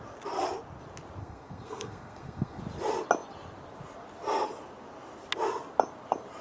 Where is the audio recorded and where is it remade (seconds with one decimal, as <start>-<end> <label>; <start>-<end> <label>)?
0.0-1.2 recorded; 1.2-2.6 remade; 2.6-6.4 recorded